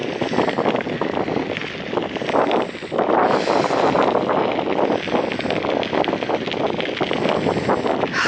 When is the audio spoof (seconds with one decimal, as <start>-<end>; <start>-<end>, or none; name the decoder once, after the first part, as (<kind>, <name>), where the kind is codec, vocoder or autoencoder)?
none